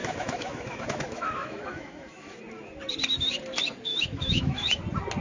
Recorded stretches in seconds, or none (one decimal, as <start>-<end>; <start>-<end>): 2.4-3.9; 4.8-5.2